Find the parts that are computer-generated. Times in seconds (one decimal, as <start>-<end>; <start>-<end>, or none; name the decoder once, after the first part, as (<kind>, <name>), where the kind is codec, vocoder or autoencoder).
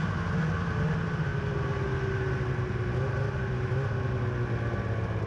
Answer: none